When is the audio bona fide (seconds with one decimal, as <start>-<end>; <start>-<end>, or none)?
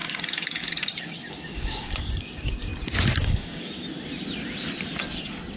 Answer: 2.7-3.2; 3.8-5.6